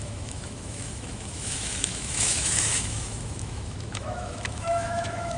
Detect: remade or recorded remade